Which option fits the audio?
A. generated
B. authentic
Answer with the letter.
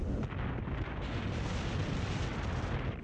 B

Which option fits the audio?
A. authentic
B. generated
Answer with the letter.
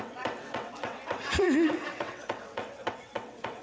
B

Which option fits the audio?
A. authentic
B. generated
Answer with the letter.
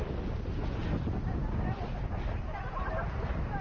A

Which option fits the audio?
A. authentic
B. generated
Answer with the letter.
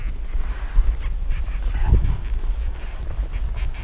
A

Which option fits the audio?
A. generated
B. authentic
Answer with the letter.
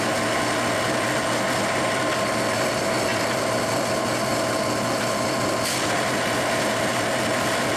B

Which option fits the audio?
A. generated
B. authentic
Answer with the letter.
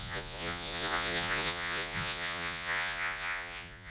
A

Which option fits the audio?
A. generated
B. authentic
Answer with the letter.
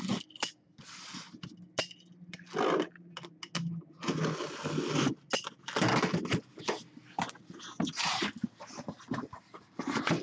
B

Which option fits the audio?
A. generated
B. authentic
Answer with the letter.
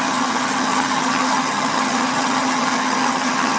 A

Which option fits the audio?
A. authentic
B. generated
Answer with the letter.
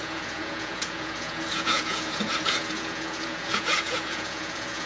B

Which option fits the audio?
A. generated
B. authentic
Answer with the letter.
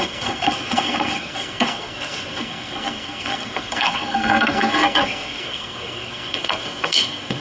A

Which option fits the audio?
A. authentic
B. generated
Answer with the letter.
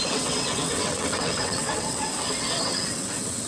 B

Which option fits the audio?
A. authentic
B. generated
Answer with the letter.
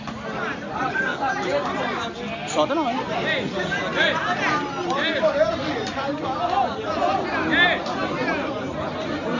A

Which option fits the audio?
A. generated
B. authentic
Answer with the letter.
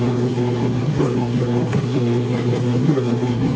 A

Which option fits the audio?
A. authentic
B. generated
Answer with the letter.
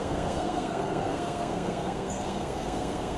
B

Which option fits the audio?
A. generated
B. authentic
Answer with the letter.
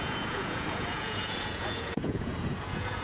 A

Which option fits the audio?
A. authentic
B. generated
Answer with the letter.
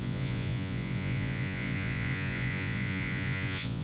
B